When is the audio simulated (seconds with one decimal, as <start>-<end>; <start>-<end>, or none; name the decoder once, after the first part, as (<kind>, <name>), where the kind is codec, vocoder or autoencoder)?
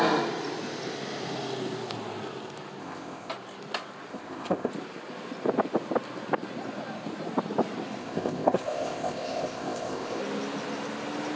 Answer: 2.8-3.3 (codec, ZipCodec); 4.1-4.7; 8.0-10.2